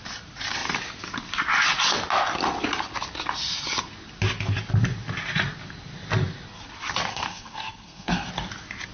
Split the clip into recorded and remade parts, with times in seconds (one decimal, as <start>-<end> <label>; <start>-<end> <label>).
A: 0.0-7.1 recorded; 7.1-8.3 remade; 8.3-8.9 recorded